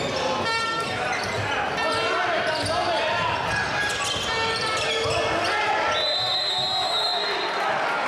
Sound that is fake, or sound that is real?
real